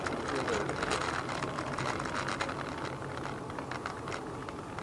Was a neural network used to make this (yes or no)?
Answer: no